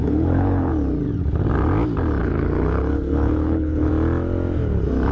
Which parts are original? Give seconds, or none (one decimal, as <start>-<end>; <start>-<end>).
0.7-2.2; 3.9-5.1